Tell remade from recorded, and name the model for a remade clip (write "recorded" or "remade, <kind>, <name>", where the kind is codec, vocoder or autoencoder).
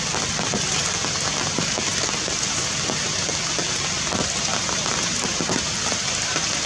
recorded